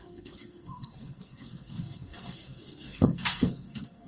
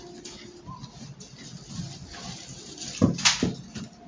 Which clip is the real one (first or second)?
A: second